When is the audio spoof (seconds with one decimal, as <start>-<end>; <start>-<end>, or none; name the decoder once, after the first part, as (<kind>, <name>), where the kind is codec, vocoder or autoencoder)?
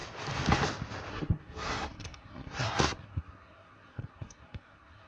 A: 1.1-5.1 (codec, SNAC)